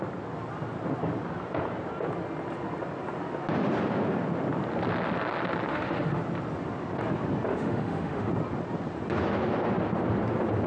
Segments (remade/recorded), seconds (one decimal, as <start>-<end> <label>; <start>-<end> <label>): 0.0-5.7 recorded; 5.7-6.2 remade; 6.2-7.5 recorded; 7.5-8.3 remade; 8.3-10.7 recorded